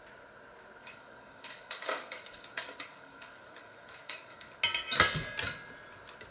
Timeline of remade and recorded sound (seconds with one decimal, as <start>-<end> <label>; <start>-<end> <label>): 0.0-0.8 recorded; 0.8-4.6 remade; 4.6-6.3 recorded